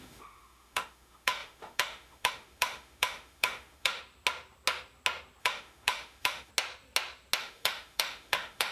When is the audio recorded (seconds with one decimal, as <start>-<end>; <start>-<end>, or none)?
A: 4.0-5.4; 6.5-7.4